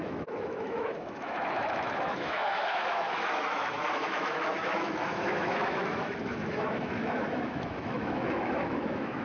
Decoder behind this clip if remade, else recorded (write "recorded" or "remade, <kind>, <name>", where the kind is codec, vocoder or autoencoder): remade, autoencoder, DAC-VAE